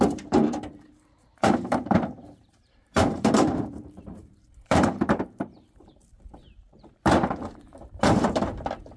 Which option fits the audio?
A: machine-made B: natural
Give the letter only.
A